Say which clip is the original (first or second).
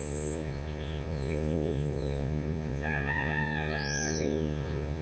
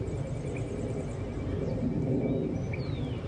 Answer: second